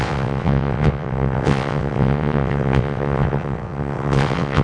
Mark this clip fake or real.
fake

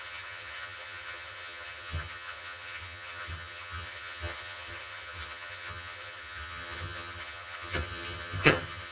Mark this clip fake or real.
fake